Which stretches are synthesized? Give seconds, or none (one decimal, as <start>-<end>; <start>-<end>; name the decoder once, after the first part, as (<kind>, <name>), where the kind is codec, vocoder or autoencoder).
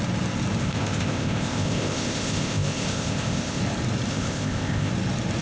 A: 0.6-3.6 (codec, ZipCodec); 4.1-4.9